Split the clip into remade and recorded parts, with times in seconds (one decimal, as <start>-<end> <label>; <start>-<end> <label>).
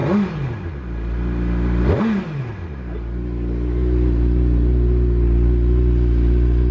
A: 0.0-6.7 recorded